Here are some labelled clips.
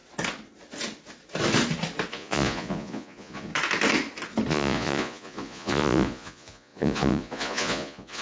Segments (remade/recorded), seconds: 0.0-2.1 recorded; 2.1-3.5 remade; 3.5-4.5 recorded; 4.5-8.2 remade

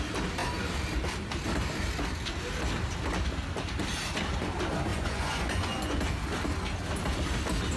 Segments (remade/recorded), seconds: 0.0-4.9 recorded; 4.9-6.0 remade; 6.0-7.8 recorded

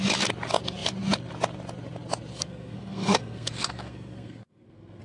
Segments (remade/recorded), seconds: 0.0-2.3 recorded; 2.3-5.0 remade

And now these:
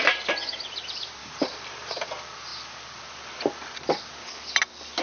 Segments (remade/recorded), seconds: 0.0-1.2 recorded; 1.2-1.9 remade; 1.9-5.0 recorded